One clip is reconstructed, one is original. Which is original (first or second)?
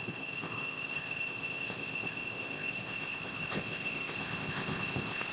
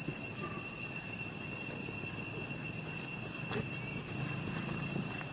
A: second